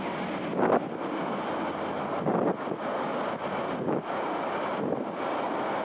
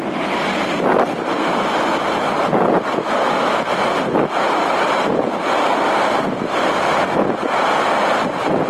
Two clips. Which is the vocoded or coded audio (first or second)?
second